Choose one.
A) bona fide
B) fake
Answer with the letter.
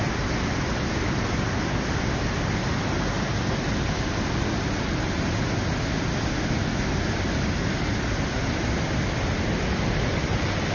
A